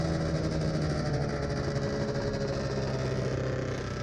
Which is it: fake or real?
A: real